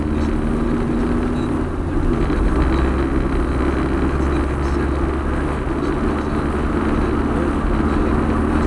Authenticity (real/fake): real